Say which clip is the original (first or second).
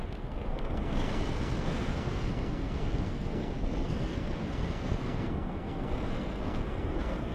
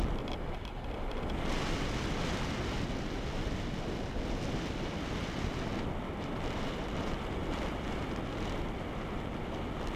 second